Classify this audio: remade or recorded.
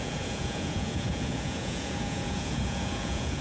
remade